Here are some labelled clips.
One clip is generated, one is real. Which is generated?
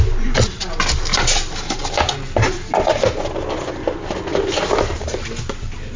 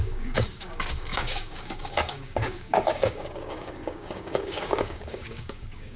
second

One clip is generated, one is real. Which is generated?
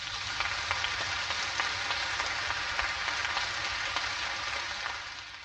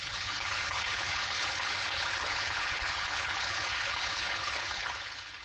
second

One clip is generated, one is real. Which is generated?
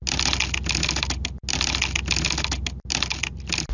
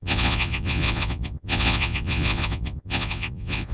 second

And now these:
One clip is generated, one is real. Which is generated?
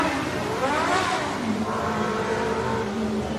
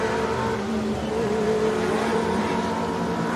first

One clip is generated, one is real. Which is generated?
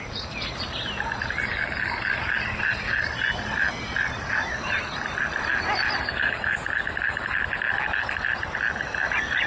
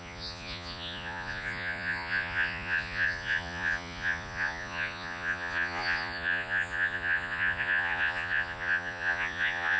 second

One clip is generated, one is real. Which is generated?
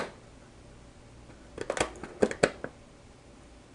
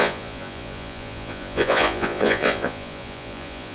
second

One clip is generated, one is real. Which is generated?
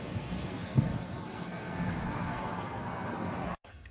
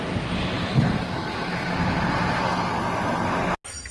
first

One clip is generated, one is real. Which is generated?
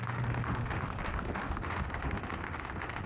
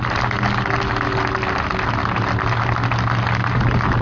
first